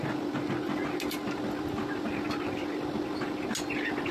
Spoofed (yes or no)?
no